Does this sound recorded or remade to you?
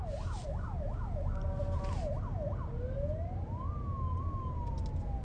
recorded